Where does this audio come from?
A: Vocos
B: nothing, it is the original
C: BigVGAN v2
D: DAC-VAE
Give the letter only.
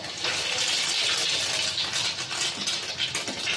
B